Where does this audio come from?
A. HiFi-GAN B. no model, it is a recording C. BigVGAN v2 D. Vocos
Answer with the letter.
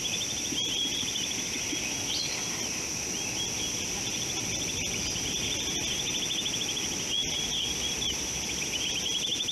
B